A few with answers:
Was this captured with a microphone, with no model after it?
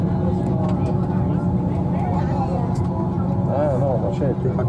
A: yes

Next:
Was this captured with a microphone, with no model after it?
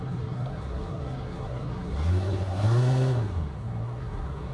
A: no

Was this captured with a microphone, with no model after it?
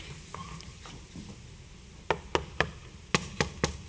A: yes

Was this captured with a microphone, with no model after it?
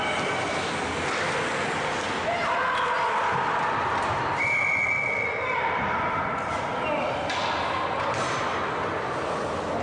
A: yes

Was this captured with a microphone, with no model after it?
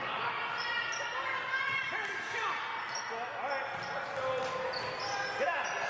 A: yes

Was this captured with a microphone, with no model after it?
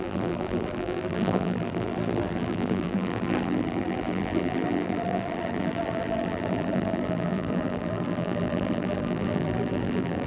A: no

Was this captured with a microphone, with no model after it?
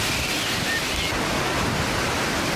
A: yes